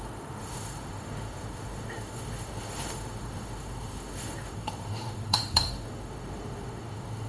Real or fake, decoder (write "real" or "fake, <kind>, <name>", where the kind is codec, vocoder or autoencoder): fake, autoencoder, DAC-VAE